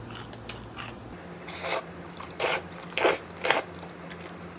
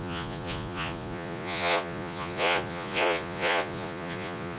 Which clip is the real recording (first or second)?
first